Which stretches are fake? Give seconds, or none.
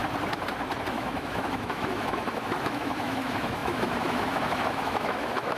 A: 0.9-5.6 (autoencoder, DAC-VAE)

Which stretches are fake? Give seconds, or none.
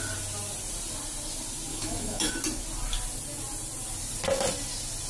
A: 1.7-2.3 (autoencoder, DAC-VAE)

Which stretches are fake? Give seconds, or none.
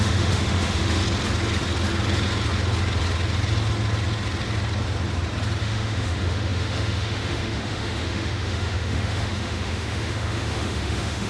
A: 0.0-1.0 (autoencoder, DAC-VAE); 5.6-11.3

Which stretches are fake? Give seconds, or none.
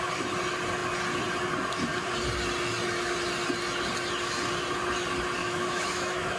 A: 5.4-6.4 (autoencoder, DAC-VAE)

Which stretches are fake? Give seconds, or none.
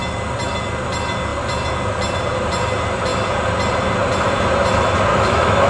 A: 5.1-5.7 (autoencoder, DAC-VAE)